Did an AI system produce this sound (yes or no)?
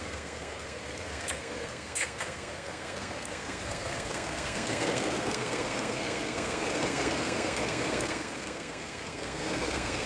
yes